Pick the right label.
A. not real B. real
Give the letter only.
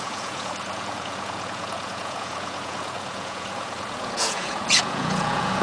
A